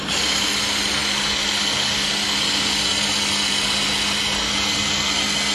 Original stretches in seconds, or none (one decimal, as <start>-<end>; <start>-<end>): 0.0-5.5